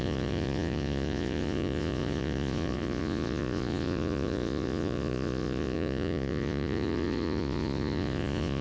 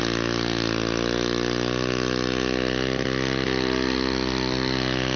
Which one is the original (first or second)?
second